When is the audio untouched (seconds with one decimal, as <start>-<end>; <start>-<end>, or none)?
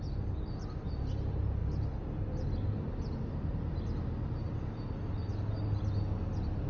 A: 0.0-6.7